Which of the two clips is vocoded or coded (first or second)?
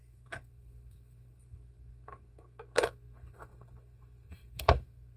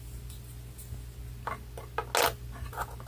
first